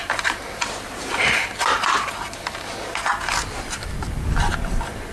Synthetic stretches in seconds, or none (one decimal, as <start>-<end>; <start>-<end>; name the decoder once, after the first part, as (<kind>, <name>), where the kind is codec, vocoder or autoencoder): 0.0-2.7 (vocoder, BigVGAN v2)